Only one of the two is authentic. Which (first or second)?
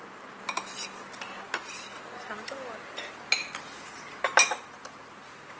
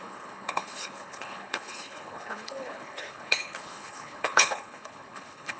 first